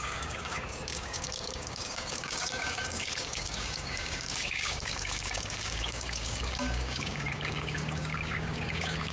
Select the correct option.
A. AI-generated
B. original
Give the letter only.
A